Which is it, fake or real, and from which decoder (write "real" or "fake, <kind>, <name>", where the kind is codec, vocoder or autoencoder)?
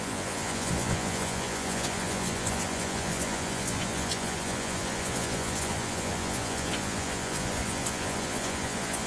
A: fake, vocoder, Vocos